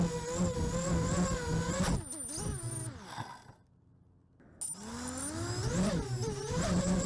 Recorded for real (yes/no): yes